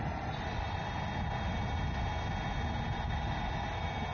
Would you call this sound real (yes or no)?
yes